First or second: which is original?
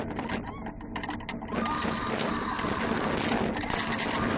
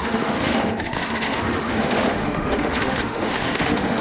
first